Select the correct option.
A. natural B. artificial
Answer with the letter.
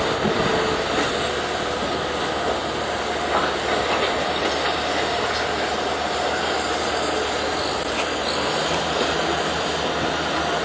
A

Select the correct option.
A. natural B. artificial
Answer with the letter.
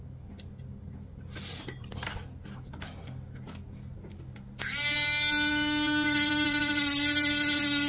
A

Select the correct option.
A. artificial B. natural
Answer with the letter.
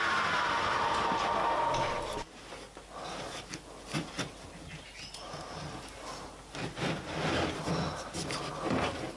B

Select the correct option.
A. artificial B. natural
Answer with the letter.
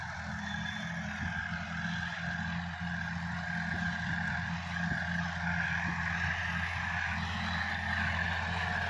B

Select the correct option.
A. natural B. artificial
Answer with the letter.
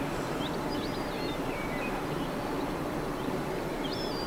B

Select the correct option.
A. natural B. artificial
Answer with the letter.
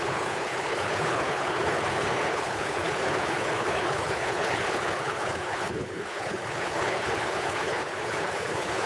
B